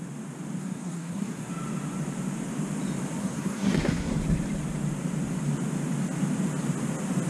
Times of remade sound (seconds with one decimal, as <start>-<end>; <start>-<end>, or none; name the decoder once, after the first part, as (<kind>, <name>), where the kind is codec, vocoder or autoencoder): 0.6-1.5 (codec, SNAC); 3.2-4.2